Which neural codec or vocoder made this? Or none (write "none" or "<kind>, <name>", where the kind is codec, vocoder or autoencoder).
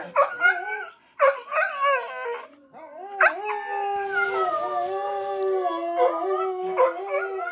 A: none